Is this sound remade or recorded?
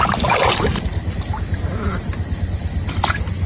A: recorded